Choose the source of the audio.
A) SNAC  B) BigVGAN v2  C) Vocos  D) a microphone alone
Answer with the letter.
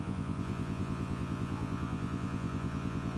C